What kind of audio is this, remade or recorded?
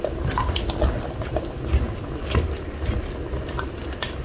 recorded